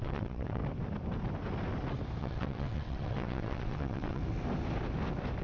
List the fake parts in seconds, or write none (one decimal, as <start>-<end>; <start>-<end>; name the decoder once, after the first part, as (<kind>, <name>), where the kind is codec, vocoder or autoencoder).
0.0-0.6 (vocoder, WaveNeXt); 2.2-4.2